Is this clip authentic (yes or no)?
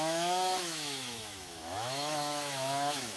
no